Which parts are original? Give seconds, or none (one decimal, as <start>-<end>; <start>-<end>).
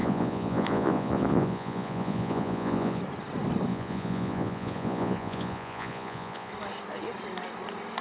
3.0-3.7; 6.5-8.0